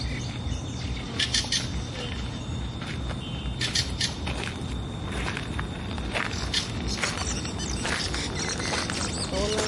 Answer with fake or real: real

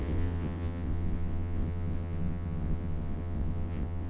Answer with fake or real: fake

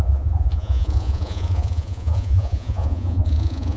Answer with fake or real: fake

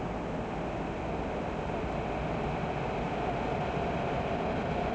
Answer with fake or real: real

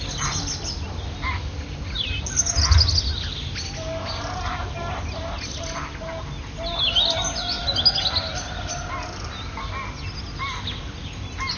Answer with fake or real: real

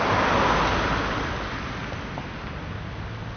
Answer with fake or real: real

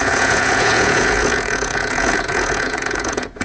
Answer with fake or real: fake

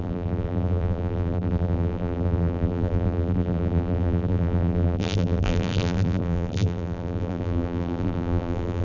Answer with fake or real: fake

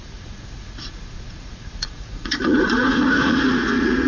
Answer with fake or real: fake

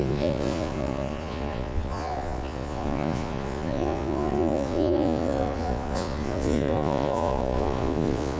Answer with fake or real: fake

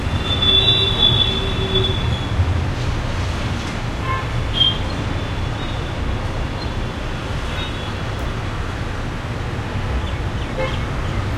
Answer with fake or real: real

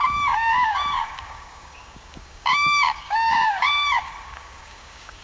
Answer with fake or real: fake